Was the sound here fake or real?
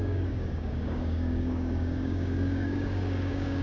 fake